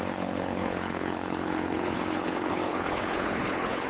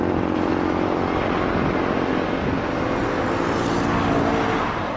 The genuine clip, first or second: second